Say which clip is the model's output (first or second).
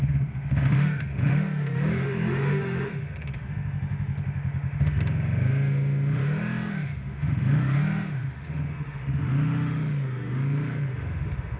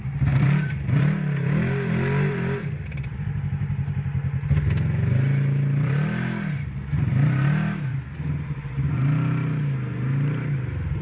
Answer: first